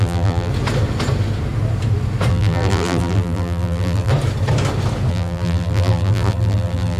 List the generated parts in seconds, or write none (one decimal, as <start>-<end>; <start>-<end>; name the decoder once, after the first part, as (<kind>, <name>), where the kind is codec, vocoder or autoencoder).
0.0-0.5 (vocoder, BigVGAN v2); 2.3-4.1; 5.1-7.0